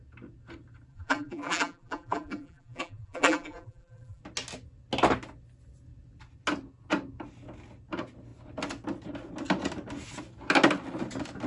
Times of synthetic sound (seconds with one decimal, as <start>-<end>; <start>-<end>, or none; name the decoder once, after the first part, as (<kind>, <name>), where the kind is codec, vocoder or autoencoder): 0.9-4.2 (vocoder, BigVGAN v2)